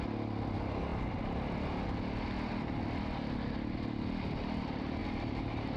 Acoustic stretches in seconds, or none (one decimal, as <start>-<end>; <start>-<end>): 0.0-5.0